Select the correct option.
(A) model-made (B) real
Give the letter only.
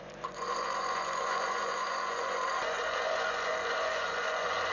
A